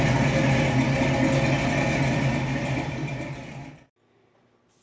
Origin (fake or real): real